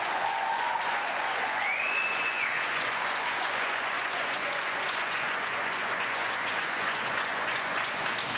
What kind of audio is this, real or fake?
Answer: fake